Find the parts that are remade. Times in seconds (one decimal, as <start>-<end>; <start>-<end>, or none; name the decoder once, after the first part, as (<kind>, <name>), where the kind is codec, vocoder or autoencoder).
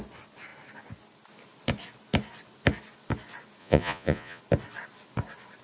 3.6-4.4 (vocoder, Vocos)